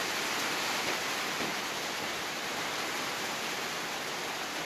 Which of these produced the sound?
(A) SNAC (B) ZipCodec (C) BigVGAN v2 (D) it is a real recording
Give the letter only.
D